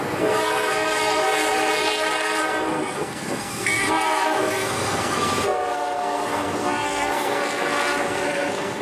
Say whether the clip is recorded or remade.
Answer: remade